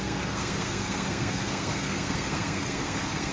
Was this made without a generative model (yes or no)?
no